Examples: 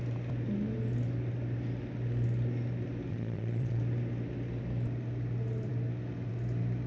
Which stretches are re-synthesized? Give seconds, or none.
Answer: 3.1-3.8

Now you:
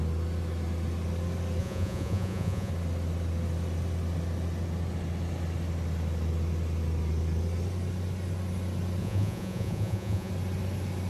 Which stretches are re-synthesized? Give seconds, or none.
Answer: 1.6-2.7; 9.0-10.3

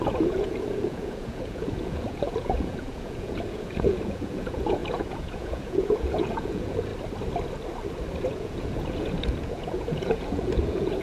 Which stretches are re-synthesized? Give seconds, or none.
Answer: 0.0-6.9; 8.2-11.0

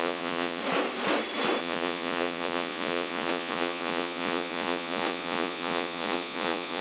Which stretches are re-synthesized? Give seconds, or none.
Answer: 0.0-0.6; 1.6-6.8

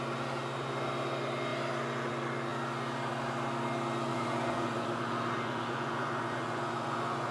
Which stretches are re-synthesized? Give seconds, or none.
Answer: 4.1-7.3